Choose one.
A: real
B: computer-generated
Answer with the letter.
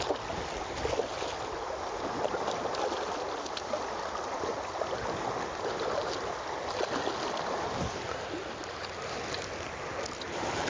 A